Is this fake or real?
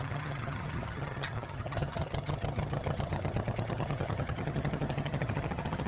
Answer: fake